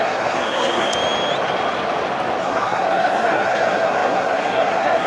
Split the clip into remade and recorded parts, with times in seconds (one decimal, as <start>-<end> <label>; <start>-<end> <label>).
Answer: 0.0-0.9 remade; 0.9-2.4 recorded; 2.4-5.1 remade